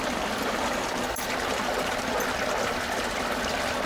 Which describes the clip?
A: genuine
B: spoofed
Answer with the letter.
A